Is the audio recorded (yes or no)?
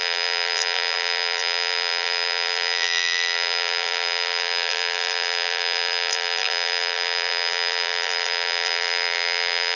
no